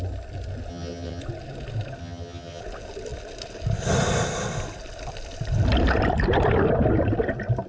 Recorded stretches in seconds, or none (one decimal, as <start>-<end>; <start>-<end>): 0.0-0.7; 1.2-2.0; 2.6-7.7